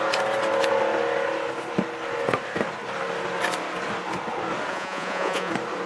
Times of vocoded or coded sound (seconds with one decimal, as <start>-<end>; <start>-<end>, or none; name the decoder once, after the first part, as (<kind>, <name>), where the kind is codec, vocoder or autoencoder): 4.7-5.5 (vocoder, Vocos)